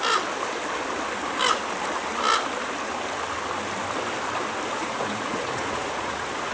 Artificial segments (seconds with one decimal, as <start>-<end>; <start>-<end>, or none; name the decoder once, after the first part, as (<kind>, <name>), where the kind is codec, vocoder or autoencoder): 4.8-6.5 (vocoder, Vocos)